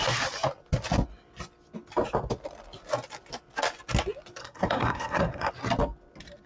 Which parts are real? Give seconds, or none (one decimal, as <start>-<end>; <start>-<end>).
0.0-4.4; 5.5-6.5

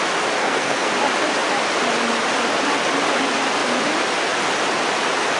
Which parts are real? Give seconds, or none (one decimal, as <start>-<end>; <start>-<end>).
0.0-0.4; 0.9-5.4

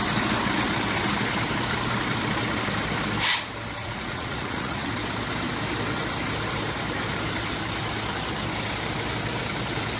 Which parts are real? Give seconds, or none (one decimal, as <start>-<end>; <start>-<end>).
0.0-3.8; 4.9-10.0

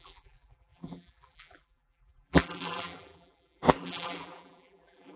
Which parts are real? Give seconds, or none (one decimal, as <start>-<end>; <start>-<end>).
none

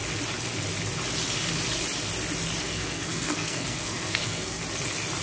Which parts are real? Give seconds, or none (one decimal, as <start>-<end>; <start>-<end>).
0.0-2.6; 4.6-5.2